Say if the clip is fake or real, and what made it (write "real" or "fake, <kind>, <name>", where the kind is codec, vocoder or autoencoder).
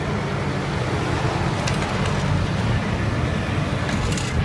real